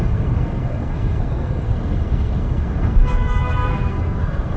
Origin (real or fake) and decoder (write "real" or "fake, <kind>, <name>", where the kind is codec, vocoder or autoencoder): fake, codec, SNAC